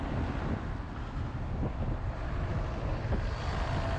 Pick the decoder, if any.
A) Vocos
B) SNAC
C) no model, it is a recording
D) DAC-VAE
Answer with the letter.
C